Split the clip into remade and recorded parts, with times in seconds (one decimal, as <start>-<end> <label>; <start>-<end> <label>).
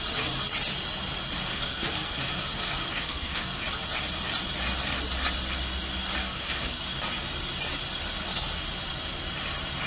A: 0.0-1.5 recorded; 1.5-3.6 remade; 3.6-6.2 recorded; 6.2-6.8 remade; 6.8-9.9 recorded